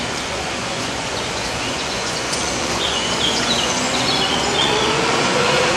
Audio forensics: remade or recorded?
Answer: remade